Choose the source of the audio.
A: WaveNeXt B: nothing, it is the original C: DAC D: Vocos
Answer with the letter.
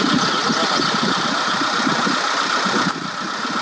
B